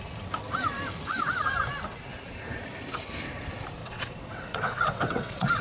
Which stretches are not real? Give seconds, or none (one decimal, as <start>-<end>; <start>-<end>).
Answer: 3.8-5.6